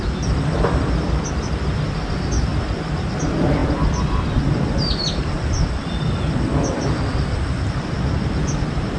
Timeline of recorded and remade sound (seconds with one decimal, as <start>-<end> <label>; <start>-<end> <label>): 0.0-9.0 recorded